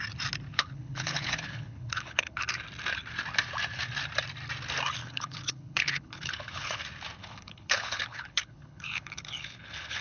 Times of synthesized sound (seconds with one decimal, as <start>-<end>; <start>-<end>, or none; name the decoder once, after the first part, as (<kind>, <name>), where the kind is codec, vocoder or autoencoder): 0.5-2.5 (codec, HILCodec); 5.0-6.8; 7.2-10.0